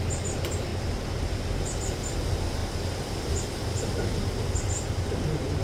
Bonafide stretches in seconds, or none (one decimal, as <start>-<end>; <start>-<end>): 0.0-0.7; 1.4-5.6